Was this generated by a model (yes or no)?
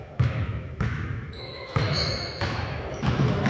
yes